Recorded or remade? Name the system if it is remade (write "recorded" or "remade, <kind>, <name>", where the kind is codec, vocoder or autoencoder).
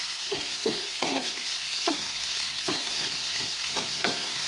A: remade, codec, SNAC